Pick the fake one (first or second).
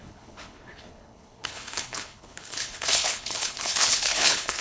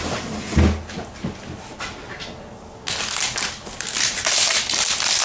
first